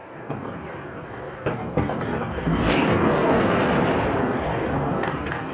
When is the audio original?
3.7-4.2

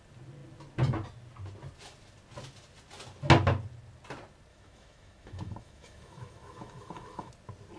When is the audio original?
0.0-4.5; 7.3-7.8

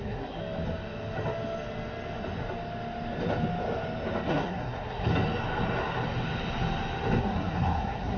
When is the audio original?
0.4-4.3; 5.1-7.2

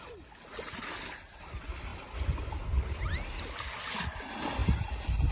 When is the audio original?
0.0-5.3

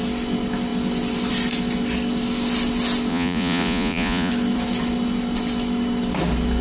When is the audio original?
0.0-3.1; 4.3-6.6

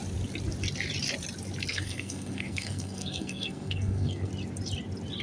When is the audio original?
0.0-1.7; 4.3-5.2